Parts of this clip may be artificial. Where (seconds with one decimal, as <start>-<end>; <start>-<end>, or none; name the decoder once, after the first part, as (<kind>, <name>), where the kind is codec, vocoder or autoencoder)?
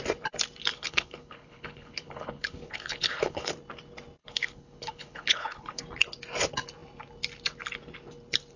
0.7-3.5 (codec, HILCodec); 4.2-5.8